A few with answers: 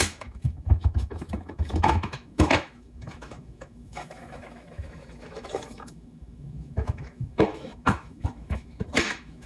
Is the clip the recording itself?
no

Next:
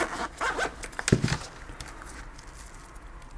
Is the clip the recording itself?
yes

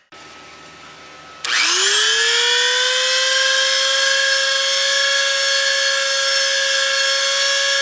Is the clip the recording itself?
yes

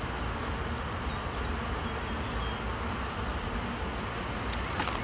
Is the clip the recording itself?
yes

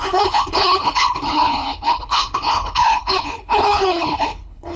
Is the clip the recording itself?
no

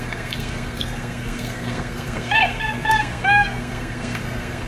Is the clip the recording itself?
no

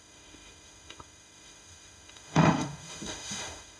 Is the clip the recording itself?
no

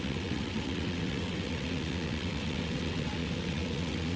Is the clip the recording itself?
no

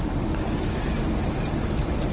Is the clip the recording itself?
yes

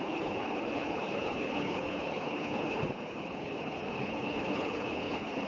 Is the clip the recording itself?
no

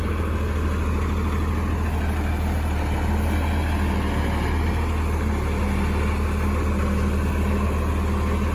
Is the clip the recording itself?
yes